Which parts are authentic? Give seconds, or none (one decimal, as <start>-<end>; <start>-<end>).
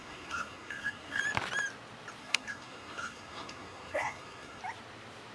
1.2-2.2; 4.6-5.3